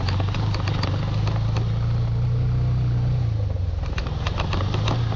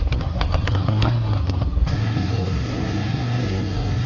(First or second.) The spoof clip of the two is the second